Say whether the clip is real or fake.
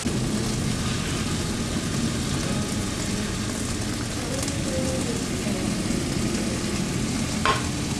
real